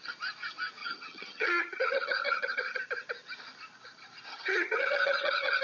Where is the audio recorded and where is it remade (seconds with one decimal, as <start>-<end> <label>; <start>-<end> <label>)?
0.0-0.8 recorded; 0.8-2.8 remade; 2.8-4.3 recorded; 4.3-5.6 remade

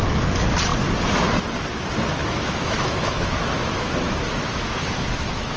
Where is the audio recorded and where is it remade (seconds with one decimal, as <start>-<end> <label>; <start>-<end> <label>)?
0.0-2.2 recorded; 2.2-5.6 remade